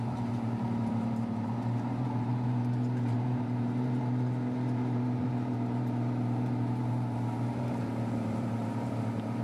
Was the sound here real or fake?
fake